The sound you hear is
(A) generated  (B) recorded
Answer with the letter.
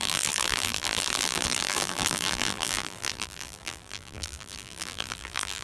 A